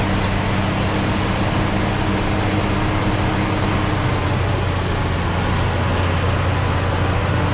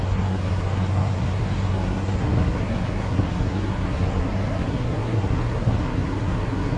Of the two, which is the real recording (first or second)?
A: first